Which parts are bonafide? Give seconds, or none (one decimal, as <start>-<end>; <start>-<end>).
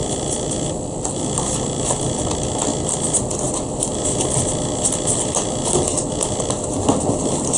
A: 2.2-7.6